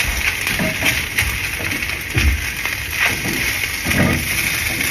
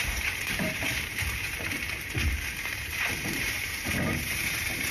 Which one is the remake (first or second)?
second